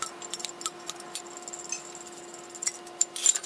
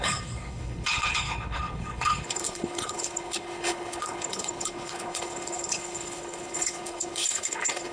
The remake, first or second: second